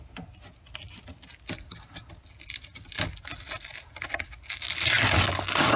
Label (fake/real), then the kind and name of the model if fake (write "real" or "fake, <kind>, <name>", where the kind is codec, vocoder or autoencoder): real